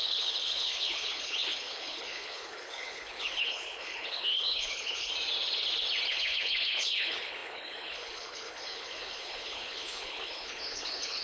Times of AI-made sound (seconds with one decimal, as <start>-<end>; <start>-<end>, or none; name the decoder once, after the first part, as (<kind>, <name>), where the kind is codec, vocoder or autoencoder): 0.0-5.1 (codec, HILCodec); 6.1-11.2